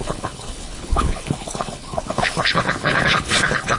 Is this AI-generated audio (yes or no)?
yes